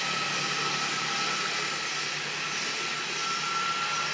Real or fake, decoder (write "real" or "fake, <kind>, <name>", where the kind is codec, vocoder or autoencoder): real